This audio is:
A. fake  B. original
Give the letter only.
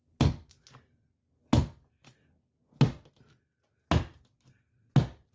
B